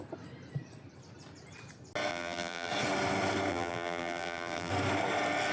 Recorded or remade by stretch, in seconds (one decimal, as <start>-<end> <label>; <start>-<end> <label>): 0.0-2.1 recorded; 2.1-2.7 remade; 2.7-3.5 recorded; 3.5-4.7 remade; 4.7-5.5 recorded